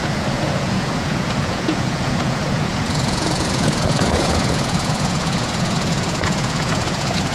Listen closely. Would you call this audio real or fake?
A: fake